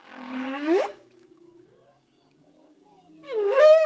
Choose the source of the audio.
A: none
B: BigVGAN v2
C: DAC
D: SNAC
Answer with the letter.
C